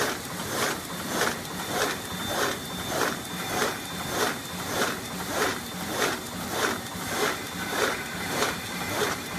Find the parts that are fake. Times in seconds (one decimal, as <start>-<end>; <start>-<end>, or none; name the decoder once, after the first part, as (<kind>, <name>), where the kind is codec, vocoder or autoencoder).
none